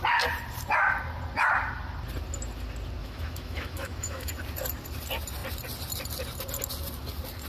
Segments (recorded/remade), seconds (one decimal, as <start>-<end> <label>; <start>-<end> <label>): 0.0-3.0 recorded; 3.0-4.3 remade; 4.3-7.5 recorded